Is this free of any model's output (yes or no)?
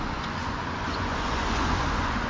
no